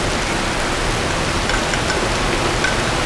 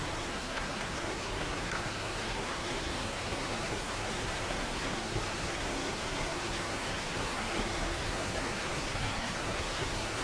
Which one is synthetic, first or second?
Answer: second